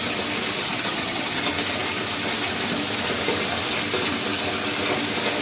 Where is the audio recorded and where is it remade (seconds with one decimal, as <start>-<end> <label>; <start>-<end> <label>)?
0.0-0.6 recorded; 0.6-1.4 remade; 1.4-5.4 recorded